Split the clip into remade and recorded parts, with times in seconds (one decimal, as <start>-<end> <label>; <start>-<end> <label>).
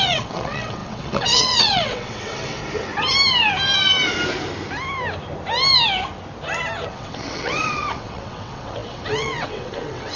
0.0-2.6 remade; 2.6-6.9 recorded; 6.9-10.2 remade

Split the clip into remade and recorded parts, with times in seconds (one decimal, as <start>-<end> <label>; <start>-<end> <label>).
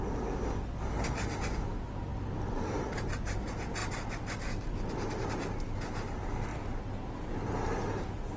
0.0-8.4 recorded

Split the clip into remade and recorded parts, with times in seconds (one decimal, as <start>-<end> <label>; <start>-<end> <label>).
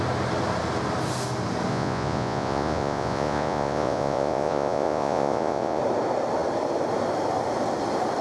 0.0-1.7 recorded; 1.7-5.8 remade; 5.8-8.2 recorded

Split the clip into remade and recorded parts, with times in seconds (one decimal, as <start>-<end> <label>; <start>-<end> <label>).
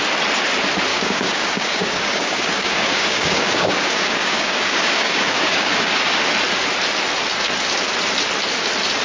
0.0-0.9 recorded; 0.9-6.2 remade; 6.2-9.0 recorded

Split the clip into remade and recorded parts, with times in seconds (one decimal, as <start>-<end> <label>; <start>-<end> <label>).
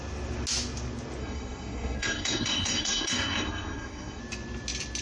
0.0-1.2 recorded; 1.2-4.2 remade; 4.2-5.0 recorded